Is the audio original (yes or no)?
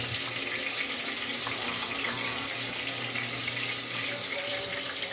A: yes